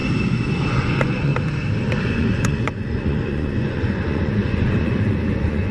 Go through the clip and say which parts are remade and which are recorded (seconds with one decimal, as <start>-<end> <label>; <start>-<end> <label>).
0.0-0.7 recorded; 0.7-1.3 remade; 1.3-2.0 recorded; 2.0-5.7 remade